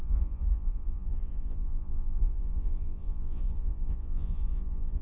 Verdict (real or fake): fake